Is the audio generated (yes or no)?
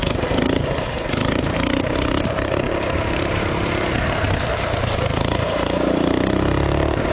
yes